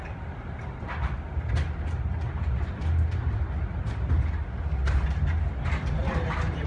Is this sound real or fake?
real